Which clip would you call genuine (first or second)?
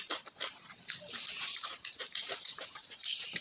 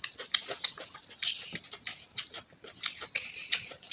second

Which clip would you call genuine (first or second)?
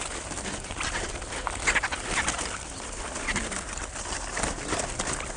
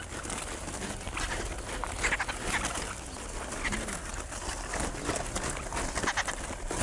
second